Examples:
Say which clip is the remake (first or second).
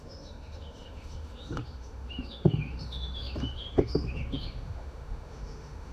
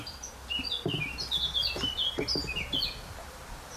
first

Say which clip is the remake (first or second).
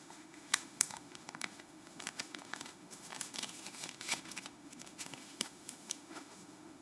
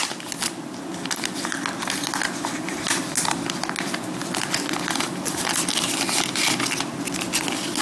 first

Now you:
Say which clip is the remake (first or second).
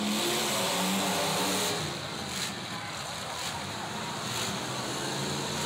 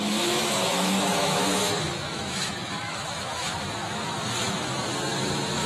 second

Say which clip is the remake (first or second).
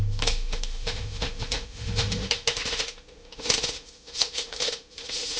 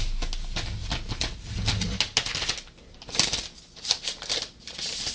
first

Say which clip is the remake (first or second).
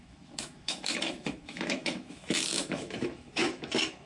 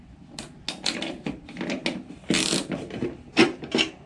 first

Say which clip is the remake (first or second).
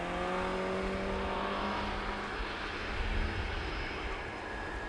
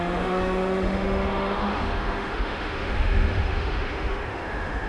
second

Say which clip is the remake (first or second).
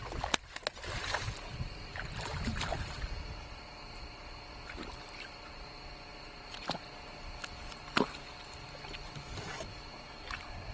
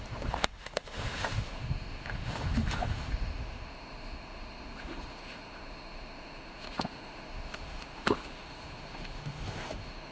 second